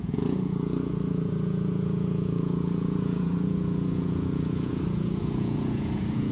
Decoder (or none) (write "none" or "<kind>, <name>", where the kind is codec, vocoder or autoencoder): vocoder, Vocos